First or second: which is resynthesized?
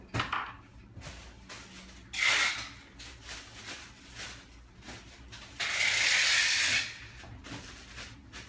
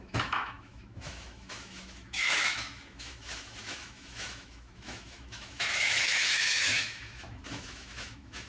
second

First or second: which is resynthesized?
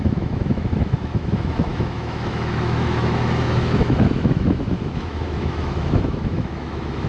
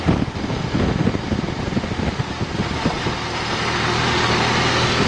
first